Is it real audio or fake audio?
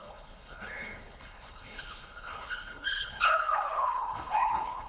fake